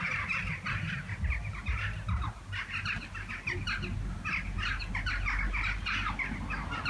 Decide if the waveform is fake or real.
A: real